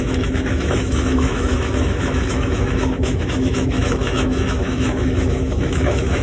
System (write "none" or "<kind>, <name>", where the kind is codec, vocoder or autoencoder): autoencoder, DAC-VAE